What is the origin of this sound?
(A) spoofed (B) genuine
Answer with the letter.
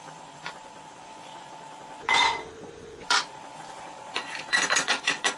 A